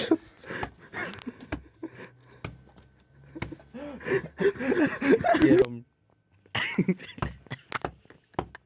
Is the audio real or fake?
real